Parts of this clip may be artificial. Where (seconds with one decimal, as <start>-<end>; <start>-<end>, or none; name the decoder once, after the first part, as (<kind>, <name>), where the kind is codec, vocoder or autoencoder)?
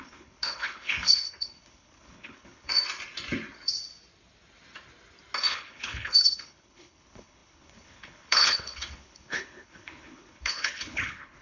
0.0-2.7 (codec, HILCodec); 5.5-11.4